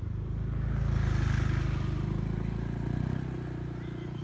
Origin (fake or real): real